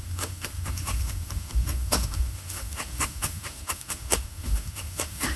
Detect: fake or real fake